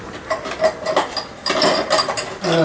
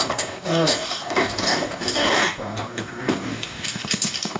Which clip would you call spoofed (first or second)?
second